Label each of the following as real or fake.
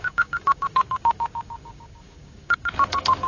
fake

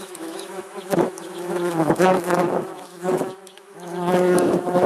fake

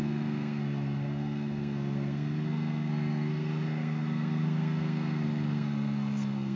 fake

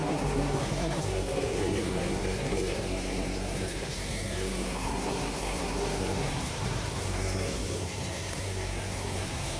fake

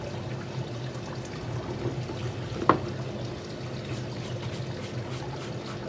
real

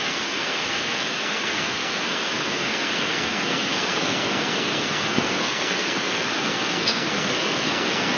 fake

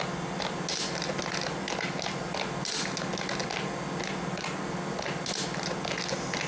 real